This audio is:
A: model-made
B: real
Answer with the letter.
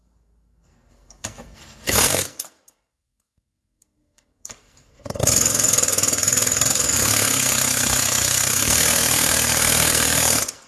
A